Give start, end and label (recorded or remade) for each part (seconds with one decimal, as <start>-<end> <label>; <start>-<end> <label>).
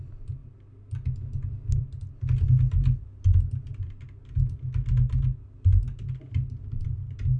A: 0.0-7.4 recorded